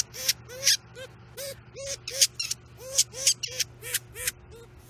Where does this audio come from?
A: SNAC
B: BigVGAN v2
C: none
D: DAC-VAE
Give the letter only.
C